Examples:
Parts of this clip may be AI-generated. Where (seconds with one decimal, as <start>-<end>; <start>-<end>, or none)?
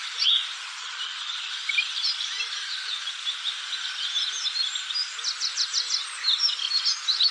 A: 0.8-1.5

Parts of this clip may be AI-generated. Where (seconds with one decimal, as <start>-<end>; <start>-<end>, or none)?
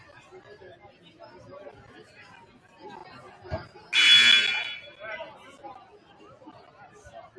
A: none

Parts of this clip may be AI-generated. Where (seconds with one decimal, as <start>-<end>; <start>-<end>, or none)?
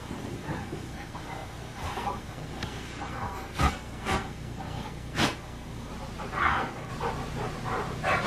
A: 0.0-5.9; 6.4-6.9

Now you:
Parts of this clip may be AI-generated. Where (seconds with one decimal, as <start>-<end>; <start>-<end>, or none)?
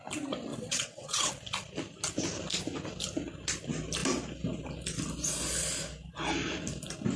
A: 0.5-1.3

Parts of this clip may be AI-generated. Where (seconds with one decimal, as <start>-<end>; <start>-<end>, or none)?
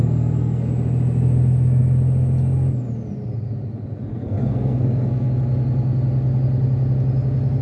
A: 0.0-0.7; 4.1-5.3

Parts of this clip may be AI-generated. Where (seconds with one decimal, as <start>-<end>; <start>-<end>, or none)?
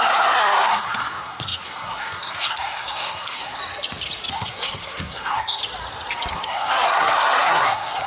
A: 0.0-3.6; 4.3-5.6; 6.3-8.1